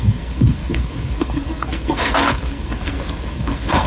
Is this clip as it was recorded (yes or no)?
no